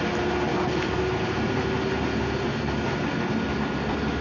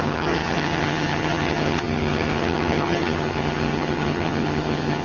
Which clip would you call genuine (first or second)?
first